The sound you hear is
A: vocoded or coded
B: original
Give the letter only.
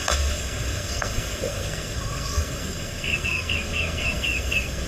A